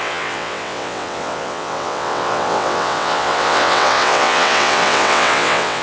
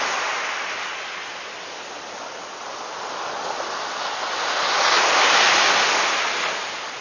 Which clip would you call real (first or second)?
second